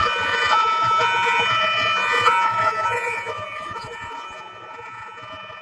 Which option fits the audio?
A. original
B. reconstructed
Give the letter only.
B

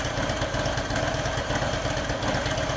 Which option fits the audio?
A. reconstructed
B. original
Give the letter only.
B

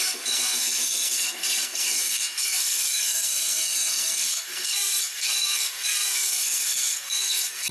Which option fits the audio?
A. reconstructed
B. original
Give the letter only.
A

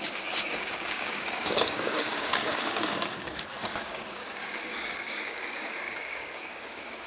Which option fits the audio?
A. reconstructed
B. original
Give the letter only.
A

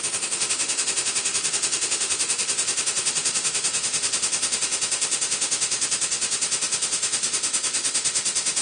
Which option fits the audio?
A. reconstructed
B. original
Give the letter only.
A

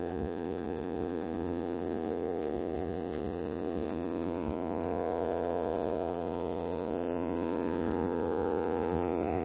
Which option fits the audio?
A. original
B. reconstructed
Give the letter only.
B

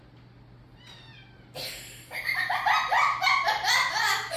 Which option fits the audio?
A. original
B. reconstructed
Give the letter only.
A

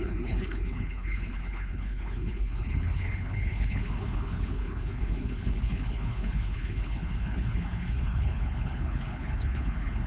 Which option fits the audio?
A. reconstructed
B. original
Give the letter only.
A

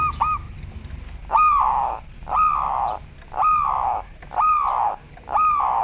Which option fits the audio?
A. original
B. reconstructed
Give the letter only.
A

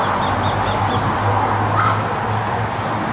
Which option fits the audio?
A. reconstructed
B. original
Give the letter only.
B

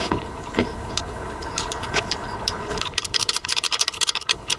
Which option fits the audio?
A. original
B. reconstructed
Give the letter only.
B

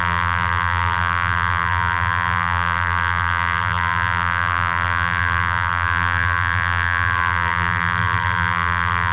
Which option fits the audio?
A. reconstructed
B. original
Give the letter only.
A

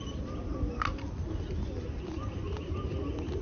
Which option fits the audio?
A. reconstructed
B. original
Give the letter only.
B